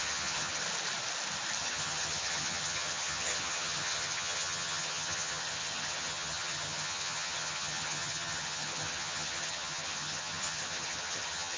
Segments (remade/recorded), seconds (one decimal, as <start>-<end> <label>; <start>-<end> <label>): 0.0-0.6 remade; 0.6-1.6 recorded; 1.6-11.6 remade